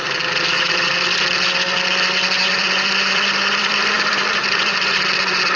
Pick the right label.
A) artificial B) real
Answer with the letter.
A